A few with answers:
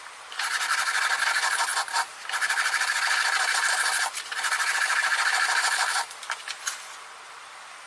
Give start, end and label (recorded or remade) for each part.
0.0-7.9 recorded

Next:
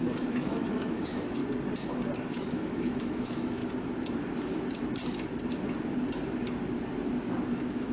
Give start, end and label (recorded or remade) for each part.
0.0-1.4 remade; 1.4-2.3 recorded; 2.3-3.6 remade; 3.6-7.5 recorded; 7.5-7.9 remade

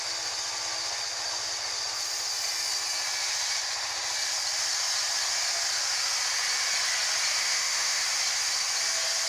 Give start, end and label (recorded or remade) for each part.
0.0-7.4 recorded; 7.4-8.0 remade; 8.0-9.3 recorded

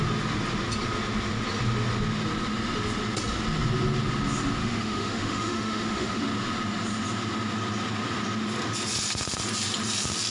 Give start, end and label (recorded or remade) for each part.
0.0-4.6 recorded; 4.6-6.2 remade; 6.2-10.3 recorded

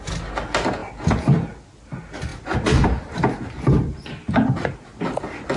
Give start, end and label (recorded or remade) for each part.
0.0-5.6 recorded

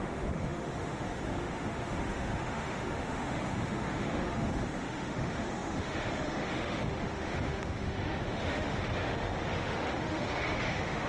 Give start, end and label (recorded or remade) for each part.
0.0-11.1 remade

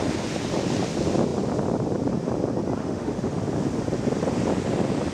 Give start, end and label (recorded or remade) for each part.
0.0-2.8 recorded; 2.8-3.4 remade; 3.4-5.1 recorded